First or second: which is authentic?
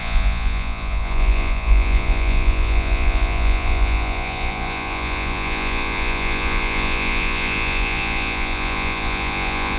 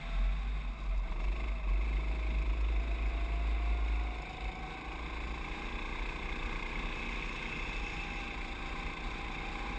second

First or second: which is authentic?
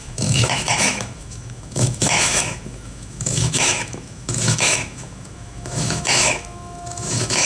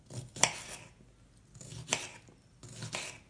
second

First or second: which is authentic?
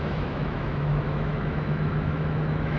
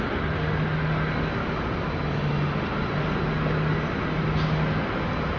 second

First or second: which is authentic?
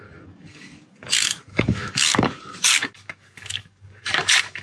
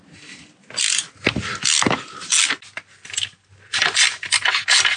second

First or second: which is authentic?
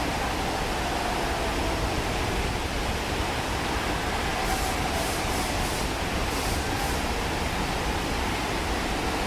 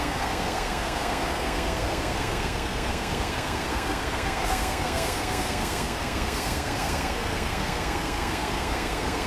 first